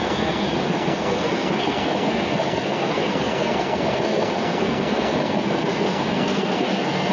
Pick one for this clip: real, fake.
fake